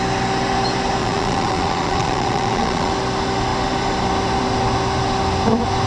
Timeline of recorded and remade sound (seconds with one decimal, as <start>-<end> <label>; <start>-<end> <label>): 0.0-1.0 recorded; 1.0-2.9 remade; 2.9-5.9 recorded